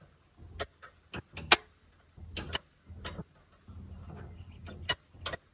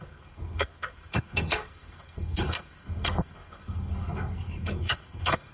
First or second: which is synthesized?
second